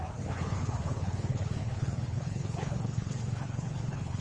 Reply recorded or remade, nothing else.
remade